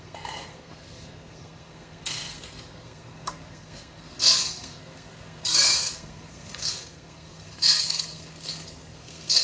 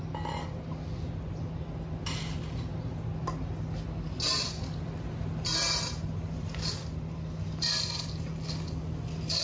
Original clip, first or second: second